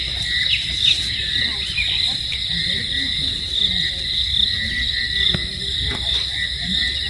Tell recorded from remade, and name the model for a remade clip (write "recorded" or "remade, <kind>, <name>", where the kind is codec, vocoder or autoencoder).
recorded